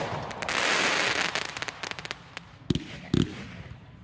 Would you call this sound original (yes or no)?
yes